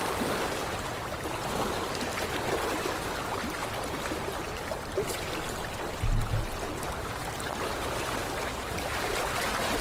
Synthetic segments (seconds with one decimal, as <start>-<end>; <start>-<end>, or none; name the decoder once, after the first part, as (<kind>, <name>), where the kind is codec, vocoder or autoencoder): none